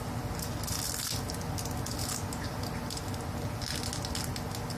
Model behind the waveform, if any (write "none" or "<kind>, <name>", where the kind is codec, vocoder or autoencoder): none